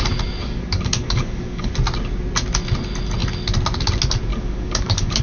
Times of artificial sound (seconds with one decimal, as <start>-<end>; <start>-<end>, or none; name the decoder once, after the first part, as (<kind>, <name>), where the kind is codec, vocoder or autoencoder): 0.4-1.7 (codec, DAC); 4.3-5.2